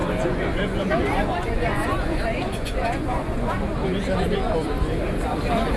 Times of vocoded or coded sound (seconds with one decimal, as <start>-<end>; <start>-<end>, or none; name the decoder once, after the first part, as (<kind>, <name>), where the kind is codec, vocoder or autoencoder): 0.0-3.5 (vocoder, Vocos)